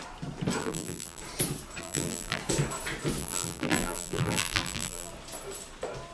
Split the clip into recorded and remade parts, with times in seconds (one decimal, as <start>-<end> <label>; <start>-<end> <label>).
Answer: 0.0-0.6 recorded; 0.6-1.2 remade; 1.2-1.8 recorded; 1.8-2.4 remade; 2.4-3.2 recorded; 3.2-5.1 remade; 5.1-6.1 recorded